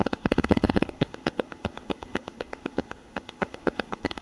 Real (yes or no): no